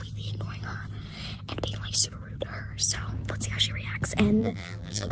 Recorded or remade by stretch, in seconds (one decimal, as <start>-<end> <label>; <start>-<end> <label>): 0.0-4.4 recorded; 4.4-5.1 remade